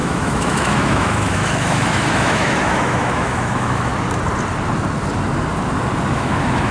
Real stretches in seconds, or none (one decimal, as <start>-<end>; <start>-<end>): 3.9-6.1